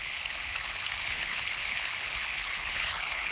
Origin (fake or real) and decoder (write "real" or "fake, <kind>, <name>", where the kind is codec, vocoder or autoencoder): fake, codec, HILCodec